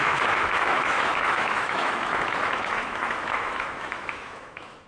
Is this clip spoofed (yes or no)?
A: yes